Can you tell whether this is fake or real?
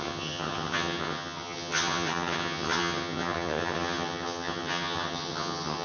fake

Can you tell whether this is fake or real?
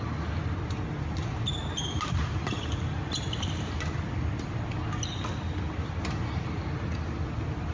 real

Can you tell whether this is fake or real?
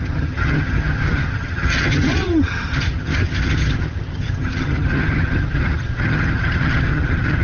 fake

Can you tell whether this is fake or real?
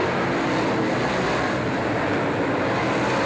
real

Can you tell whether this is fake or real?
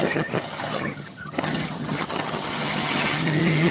fake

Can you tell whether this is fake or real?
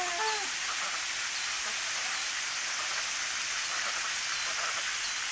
real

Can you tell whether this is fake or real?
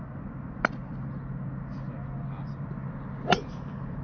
real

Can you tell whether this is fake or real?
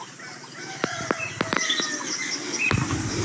real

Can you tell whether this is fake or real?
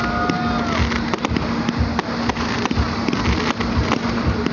real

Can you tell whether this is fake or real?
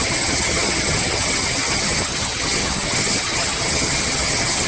fake